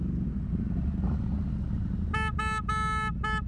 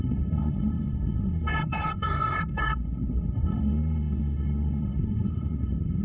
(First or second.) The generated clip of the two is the second